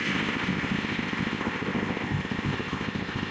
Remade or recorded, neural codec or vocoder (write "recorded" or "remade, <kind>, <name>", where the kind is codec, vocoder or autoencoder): remade, codec, ZipCodec